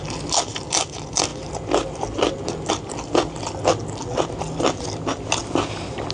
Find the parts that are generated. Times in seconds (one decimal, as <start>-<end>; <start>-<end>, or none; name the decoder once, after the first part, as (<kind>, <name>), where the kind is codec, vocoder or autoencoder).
none